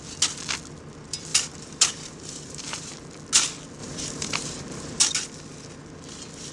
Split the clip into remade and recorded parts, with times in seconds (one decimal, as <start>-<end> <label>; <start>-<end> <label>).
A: 0.0-1.3 recorded; 1.3-2.9 remade; 2.9-3.8 recorded; 3.8-5.0 remade; 5.0-6.5 recorded

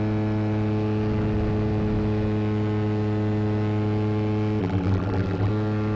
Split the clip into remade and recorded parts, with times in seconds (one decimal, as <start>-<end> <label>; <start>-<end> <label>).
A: 0.0-4.6 recorded; 4.6-5.5 remade; 5.5-6.0 recorded